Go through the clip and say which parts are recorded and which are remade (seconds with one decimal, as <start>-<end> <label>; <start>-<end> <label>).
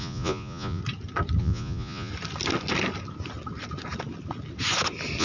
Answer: 0.0-0.8 remade; 0.8-1.4 recorded; 1.4-2.1 remade; 2.1-5.2 recorded